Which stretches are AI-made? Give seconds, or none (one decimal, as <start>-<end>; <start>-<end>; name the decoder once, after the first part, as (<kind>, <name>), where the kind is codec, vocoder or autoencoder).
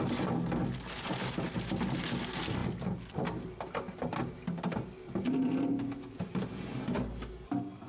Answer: none